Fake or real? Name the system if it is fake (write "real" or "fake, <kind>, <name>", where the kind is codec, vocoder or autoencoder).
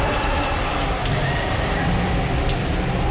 fake, vocoder, BigVGAN v2